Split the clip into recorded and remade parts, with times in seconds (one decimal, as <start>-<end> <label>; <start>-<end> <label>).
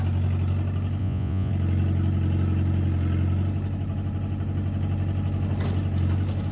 0.0-1.0 recorded; 1.0-1.5 remade; 1.5-6.5 recorded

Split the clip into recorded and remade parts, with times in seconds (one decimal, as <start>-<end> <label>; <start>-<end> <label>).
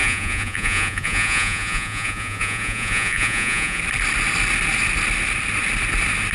0.0-3.8 remade; 3.8-6.3 recorded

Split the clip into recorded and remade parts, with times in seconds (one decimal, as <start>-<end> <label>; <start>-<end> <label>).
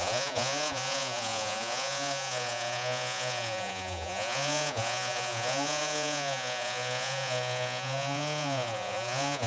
0.0-9.5 remade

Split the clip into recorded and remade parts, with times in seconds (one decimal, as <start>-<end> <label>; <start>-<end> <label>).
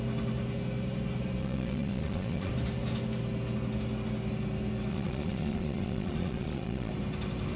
0.0-1.4 recorded; 1.4-2.5 remade; 2.5-4.9 recorded; 4.9-6.9 remade; 6.9-7.6 recorded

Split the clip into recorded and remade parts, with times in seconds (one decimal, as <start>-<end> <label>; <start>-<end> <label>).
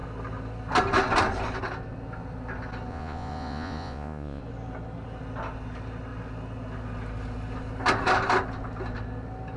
0.0-2.9 recorded; 2.9-4.4 remade; 4.4-9.6 recorded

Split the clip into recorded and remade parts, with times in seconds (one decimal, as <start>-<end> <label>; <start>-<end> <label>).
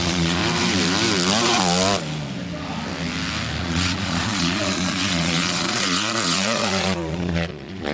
0.0-0.4 remade; 0.4-3.6 recorded; 3.6-7.9 remade